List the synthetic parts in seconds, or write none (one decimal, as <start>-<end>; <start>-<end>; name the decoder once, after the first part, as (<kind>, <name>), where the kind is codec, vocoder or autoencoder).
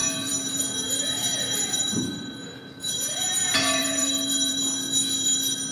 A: 0.0-2.6 (vocoder, BigVGAN v2); 3.8-4.6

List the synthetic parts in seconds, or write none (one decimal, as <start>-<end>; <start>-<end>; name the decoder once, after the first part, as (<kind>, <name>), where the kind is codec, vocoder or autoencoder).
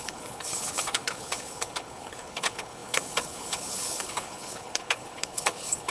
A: 0.0-5.9 (codec, HILCodec)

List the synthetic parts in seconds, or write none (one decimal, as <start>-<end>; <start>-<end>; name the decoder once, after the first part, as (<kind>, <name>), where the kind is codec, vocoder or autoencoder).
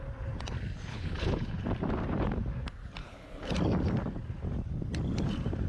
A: 0.9-1.6 (codec, HILCodec); 3.0-3.5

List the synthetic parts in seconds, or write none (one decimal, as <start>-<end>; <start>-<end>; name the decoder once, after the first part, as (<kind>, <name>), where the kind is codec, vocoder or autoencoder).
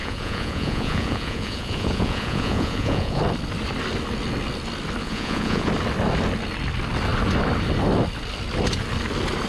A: 0.0-3.2 (vocoder, Vocos); 5.0-5.7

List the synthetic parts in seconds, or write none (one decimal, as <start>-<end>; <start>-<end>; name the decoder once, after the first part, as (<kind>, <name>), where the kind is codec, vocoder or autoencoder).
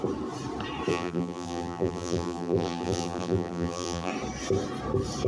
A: 0.9-4.1 (vocoder, BigVGAN v2)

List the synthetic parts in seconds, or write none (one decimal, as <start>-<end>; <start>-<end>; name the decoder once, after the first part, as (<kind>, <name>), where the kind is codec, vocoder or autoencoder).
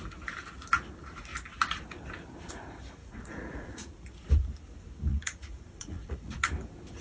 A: 3.0-3.9 (vocoder, Vocos); 5.1-6.5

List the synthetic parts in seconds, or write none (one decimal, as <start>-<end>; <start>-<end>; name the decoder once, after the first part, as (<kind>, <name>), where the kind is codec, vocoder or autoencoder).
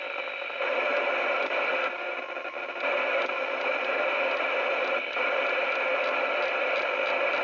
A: none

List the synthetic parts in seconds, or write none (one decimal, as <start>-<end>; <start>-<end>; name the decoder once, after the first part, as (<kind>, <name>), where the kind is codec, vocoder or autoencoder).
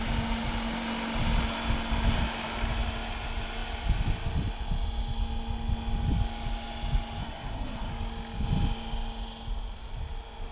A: 7.2-7.9 (codec, SNAC)